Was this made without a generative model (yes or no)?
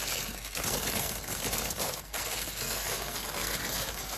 no